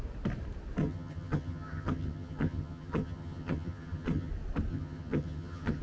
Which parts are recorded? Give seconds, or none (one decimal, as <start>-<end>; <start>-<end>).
0.0-0.8; 4.3-4.7